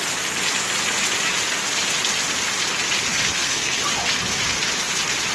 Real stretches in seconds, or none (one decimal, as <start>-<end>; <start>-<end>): 0.0-3.1; 3.8-5.3